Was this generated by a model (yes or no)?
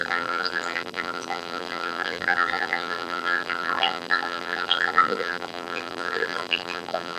yes